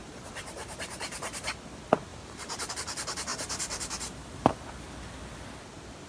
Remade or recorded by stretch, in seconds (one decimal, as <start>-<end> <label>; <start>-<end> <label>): 0.0-1.5 remade; 1.5-2.1 recorded; 2.1-2.7 remade; 2.7-3.3 recorded; 3.3-4.5 remade; 4.5-6.1 recorded